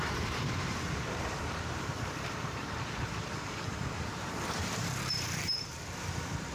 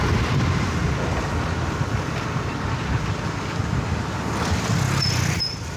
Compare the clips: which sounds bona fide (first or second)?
second